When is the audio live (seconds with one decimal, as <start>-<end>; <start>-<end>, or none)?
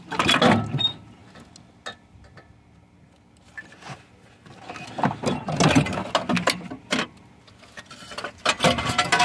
0.0-9.2